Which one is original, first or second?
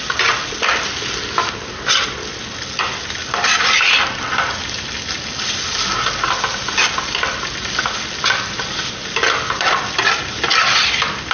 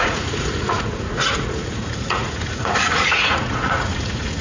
first